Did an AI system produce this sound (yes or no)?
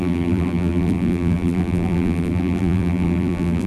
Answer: yes